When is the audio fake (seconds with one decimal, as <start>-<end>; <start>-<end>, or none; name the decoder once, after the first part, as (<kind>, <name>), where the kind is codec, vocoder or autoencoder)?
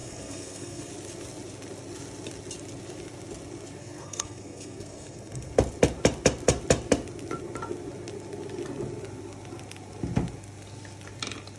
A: 0.0-0.9 (codec, SNAC); 3.8-5.5